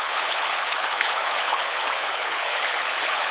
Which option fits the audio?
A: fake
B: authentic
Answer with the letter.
A